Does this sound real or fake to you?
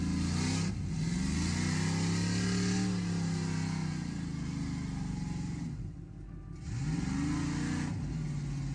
real